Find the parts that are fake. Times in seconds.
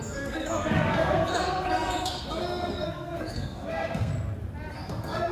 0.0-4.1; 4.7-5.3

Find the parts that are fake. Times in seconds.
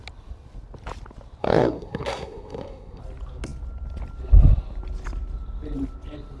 1.4-3.0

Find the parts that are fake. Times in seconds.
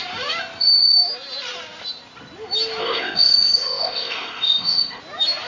2.8-5.0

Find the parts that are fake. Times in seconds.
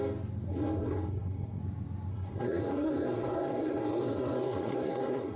0.5-1.6; 2.1-5.4